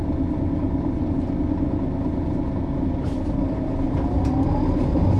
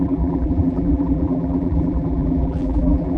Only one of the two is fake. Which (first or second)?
second